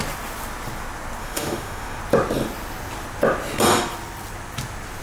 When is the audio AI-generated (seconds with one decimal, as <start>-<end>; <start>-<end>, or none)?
1.2-2.0

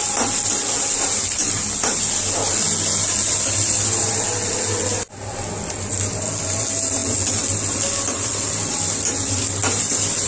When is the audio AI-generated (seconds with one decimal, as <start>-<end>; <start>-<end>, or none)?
none

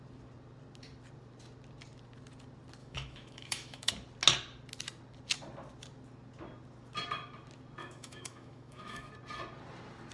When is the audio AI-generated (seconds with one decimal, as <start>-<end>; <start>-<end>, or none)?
2.8-3.9; 7.8-9.1

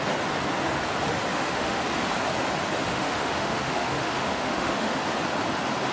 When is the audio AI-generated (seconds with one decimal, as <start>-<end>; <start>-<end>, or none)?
1.3-1.8; 2.9-5.0

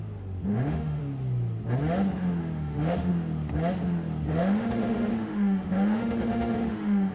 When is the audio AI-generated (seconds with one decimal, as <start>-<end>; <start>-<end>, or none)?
0.5-1.0; 2.4-3.1; 4.3-7.1

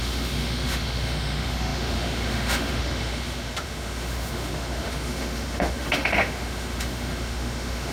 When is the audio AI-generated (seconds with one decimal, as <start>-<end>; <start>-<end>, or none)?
0.0-7.9